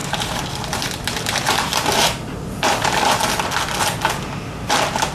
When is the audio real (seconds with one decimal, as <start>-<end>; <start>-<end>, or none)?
3.1-5.1

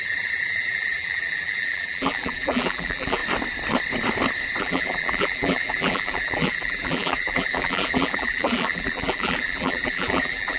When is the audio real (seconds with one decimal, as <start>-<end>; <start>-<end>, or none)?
3.2-4.6

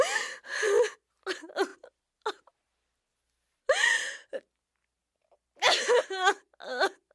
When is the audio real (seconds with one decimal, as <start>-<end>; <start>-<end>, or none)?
0.0-7.1

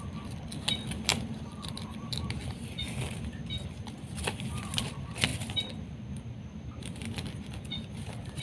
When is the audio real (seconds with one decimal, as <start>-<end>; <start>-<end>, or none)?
0.0-1.1; 1.7-5.3; 5.9-8.4